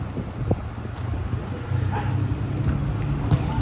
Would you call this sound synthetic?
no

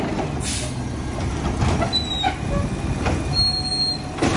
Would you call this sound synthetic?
no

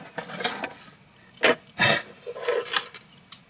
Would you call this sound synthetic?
no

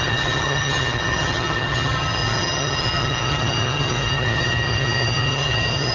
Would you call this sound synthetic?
yes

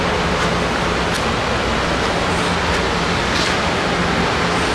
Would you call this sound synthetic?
no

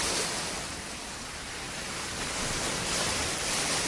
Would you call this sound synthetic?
no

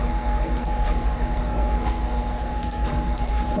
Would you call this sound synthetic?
yes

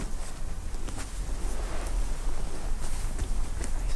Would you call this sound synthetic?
no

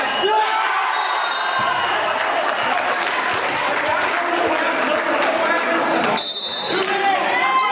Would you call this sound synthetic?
no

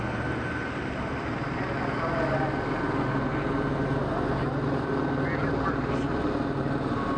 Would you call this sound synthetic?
no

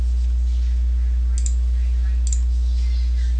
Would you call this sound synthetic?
no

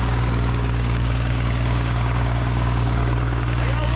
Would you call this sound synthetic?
yes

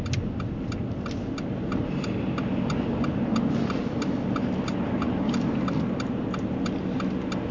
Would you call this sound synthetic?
no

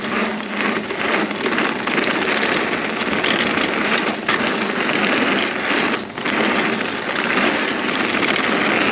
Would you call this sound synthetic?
no